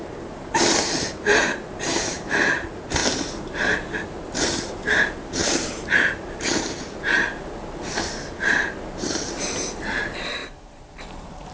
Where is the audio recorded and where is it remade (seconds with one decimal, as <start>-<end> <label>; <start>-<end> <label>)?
0.0-3.0 remade; 3.0-4.4 recorded; 4.4-11.5 remade